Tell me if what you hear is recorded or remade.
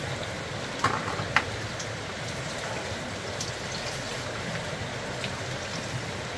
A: recorded